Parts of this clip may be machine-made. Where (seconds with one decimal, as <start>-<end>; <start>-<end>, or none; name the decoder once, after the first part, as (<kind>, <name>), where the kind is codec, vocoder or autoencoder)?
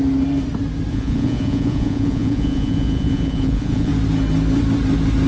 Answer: 0.9-3.9 (vocoder, Vocos)